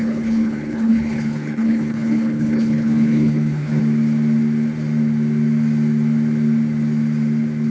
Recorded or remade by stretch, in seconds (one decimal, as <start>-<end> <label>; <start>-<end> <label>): 0.0-3.8 remade; 3.8-7.7 recorded